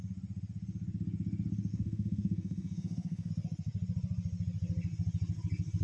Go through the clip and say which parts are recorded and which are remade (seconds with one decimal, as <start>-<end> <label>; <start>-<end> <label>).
0.0-1.7 recorded; 1.7-3.3 remade; 3.3-5.8 recorded